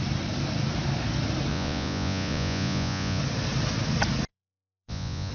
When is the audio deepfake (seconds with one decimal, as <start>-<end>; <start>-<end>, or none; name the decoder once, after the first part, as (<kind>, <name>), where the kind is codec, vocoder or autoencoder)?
1.5-3.2 (vocoder, Vocos); 4.3-5.3